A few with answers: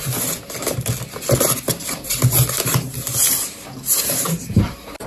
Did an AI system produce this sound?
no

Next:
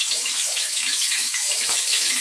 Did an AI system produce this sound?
yes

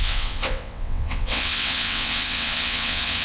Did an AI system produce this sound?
yes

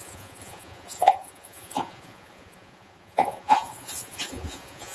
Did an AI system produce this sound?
yes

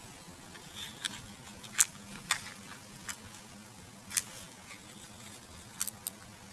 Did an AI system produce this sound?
no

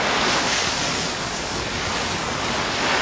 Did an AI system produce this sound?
yes